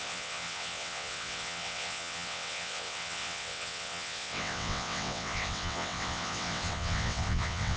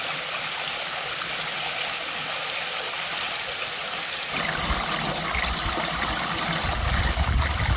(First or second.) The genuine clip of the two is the second